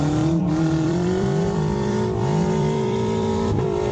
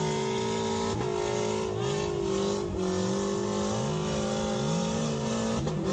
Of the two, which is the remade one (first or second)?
first